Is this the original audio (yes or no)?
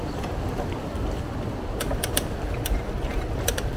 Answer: yes